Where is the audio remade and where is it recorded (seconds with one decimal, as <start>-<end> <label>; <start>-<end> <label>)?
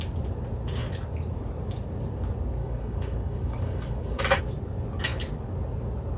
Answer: 0.0-2.6 recorded; 2.6-4.4 remade; 4.4-6.2 recorded